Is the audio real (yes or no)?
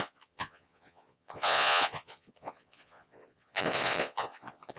no